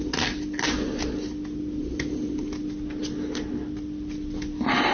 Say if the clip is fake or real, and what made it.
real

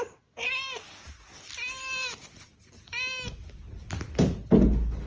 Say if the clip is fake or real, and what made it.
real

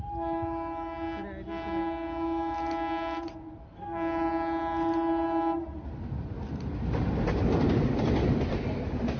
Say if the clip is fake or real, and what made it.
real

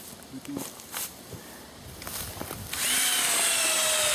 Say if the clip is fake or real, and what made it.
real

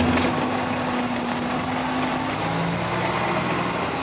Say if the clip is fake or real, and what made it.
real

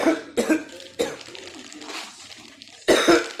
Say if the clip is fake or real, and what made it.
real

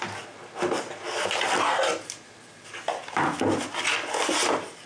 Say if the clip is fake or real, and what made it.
real